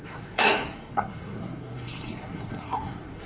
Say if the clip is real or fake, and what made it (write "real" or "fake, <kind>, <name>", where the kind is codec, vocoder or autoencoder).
fake, codec, SNAC